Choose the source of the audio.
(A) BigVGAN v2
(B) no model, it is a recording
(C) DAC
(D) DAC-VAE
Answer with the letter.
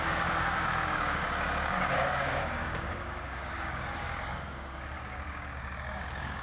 C